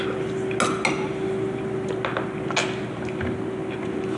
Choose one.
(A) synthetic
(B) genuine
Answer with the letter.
B